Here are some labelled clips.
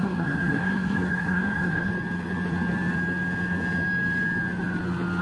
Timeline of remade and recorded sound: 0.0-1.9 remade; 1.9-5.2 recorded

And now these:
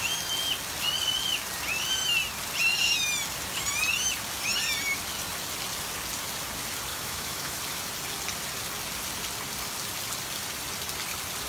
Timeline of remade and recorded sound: 0.0-6.9 recorded; 6.9-7.6 remade; 7.6-11.5 recorded

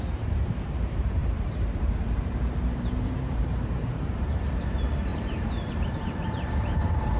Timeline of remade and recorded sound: 0.0-7.2 remade